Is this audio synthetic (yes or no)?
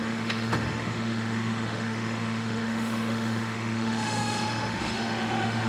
yes